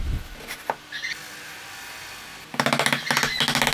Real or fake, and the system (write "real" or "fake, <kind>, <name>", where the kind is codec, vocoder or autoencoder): real